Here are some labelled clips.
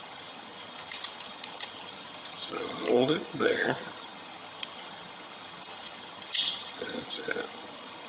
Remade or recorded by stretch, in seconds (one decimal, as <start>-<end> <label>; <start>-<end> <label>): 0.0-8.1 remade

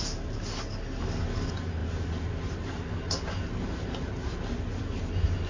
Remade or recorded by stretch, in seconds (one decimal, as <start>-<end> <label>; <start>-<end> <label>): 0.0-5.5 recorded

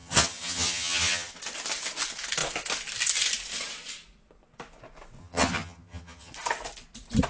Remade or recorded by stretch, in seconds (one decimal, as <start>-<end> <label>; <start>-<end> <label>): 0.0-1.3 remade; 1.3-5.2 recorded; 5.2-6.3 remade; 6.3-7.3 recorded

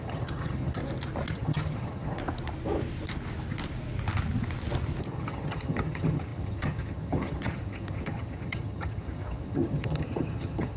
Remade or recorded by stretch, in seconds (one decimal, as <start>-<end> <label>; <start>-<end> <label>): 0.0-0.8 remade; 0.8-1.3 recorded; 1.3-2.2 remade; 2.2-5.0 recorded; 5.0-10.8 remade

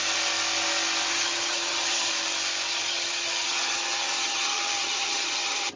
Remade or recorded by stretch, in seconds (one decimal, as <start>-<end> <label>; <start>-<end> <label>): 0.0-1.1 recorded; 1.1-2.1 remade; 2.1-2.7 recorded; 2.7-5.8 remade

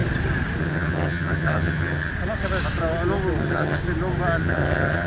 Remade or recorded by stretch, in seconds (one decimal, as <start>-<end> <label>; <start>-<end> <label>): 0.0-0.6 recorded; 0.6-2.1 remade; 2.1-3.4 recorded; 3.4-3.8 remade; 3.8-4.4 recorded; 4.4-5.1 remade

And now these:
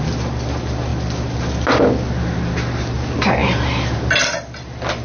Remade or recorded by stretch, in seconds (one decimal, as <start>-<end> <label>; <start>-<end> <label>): 0.0-5.0 recorded

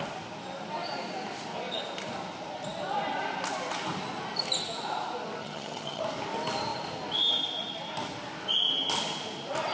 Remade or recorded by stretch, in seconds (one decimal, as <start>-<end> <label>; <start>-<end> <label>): 0.0-5.4 recorded; 5.4-6.0 remade; 6.0-9.7 recorded